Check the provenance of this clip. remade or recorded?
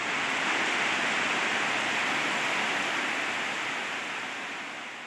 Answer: recorded